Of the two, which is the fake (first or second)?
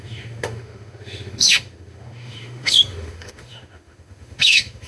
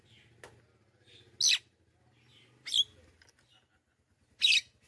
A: first